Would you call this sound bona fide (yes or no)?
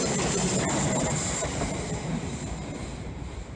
no